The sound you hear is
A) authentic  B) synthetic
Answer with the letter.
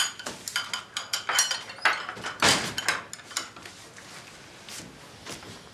A